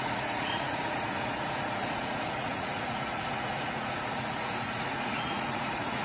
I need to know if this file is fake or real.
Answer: fake